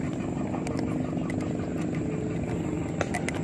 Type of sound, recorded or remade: recorded